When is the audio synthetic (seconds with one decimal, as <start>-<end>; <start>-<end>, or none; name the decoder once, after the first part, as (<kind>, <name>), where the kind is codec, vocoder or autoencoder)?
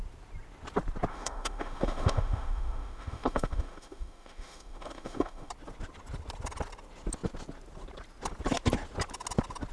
1.1-5.5 (autoencoder, DAC-VAE)